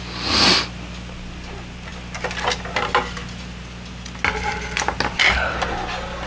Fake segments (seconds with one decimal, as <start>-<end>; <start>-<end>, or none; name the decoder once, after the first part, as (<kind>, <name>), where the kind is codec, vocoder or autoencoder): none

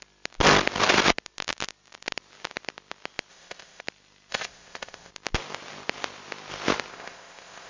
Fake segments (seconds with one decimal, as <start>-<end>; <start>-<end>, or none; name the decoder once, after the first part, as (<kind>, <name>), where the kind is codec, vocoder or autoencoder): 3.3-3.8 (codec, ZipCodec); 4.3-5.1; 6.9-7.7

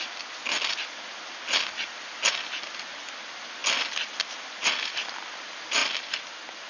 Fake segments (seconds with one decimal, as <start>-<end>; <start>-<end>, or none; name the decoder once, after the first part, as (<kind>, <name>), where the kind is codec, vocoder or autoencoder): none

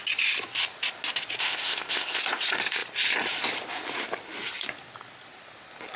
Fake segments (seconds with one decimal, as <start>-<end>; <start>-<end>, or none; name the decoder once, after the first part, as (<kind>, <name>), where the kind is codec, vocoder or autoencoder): 1.4-2.2 (codec, ZipCodec)

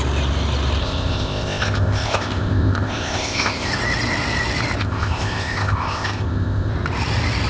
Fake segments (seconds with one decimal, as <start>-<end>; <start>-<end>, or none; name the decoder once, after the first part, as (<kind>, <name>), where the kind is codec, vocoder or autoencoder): 0.8-3.7 (codec, ZipCodec); 4.8-6.7

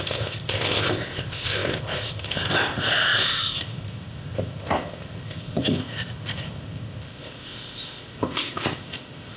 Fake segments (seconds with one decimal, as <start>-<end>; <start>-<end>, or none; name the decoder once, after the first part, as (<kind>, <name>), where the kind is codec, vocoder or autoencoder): 0.0-9.4 (codec, ZipCodec)